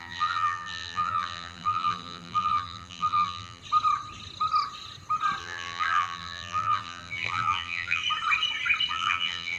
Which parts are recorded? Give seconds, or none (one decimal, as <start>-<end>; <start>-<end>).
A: 3.6-5.4; 8.0-8.9